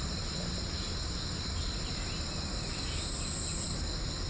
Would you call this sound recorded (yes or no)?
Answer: yes